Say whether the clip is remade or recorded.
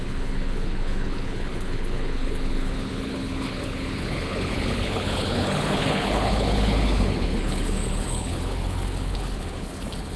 remade